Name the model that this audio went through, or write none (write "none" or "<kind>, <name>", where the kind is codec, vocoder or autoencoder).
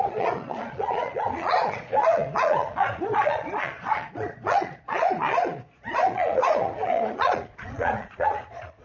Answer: vocoder, Vocos